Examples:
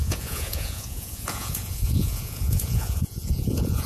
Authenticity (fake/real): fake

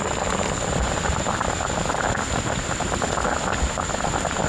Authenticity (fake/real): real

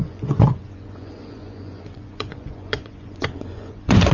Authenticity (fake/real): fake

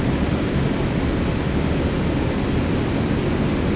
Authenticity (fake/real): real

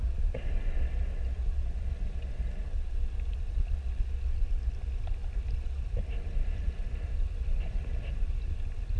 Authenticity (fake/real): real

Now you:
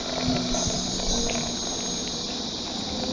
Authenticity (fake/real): real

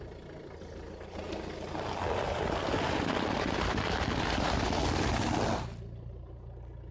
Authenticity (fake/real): real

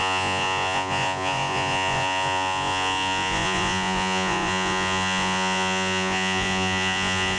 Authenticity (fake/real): fake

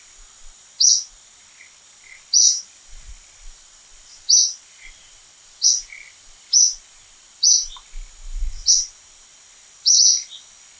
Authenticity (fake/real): real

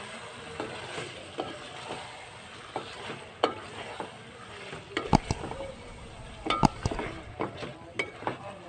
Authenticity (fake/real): real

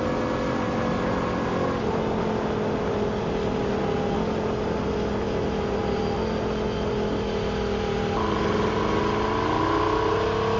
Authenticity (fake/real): real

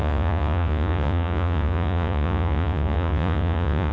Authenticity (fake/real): fake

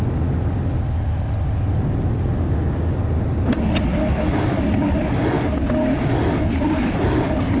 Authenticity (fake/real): real